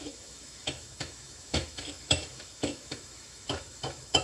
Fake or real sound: fake